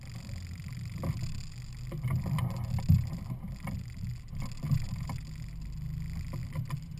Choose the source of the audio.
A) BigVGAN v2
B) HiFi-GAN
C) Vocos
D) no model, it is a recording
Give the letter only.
D